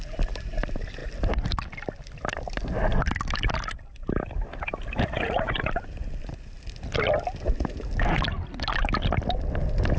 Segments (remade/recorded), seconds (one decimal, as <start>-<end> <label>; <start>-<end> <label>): 0.0-10.0 recorded